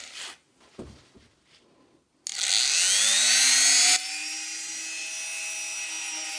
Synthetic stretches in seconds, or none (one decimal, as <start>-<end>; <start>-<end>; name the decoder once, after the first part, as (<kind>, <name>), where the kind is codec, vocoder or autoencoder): none